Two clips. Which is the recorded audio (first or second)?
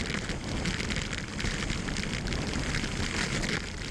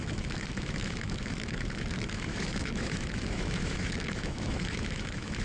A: first